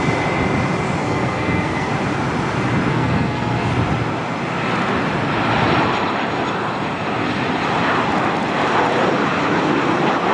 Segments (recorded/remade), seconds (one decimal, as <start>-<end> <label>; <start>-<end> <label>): 0.0-1.0 recorded; 1.0-1.9 remade; 1.9-2.9 recorded; 2.9-3.7 remade; 3.7-10.3 recorded